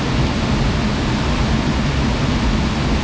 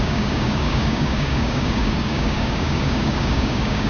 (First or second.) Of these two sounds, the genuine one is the first